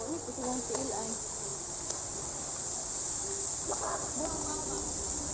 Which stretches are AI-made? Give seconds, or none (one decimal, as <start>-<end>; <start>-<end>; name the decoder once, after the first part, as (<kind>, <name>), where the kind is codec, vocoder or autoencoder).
none